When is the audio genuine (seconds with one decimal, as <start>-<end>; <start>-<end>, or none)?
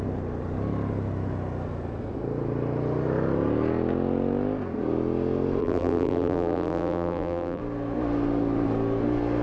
0.0-5.6; 7.6-9.4